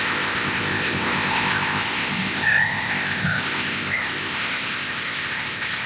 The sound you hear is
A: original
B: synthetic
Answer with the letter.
B